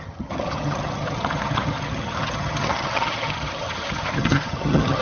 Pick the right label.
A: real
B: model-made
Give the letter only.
B